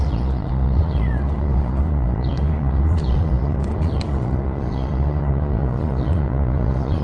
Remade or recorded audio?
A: remade